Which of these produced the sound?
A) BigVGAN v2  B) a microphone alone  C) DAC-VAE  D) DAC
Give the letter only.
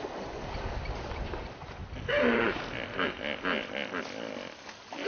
B